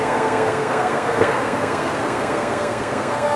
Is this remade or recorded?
remade